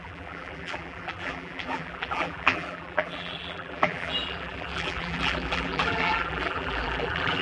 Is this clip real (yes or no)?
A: no